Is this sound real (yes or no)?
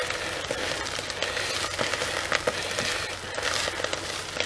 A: yes